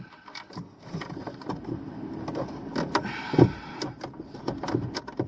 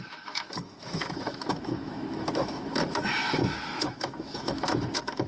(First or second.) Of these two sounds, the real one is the first